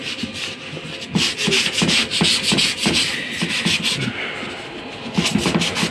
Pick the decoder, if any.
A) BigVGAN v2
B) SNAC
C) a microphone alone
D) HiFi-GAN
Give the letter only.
C